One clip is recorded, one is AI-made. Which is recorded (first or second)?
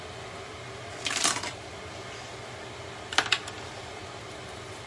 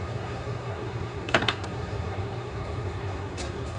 first